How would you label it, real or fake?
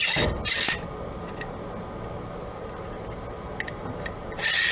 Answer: real